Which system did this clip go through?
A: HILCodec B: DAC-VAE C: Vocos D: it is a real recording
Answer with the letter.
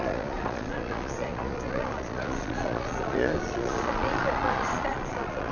C